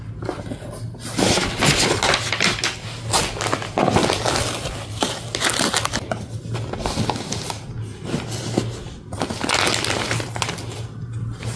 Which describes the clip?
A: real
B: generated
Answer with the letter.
A